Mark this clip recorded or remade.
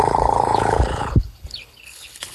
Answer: remade